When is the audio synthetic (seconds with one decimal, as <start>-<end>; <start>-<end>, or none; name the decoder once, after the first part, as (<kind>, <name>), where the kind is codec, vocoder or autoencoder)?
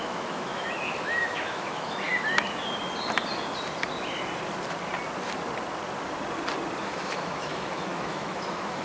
0.0-2.1 (autoencoder, DAC-VAE); 6.8-8.8